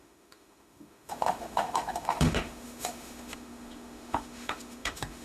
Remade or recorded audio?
remade